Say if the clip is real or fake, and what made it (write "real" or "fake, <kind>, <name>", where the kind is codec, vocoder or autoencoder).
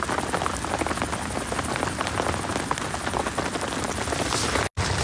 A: real